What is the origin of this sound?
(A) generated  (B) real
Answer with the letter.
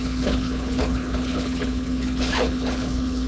A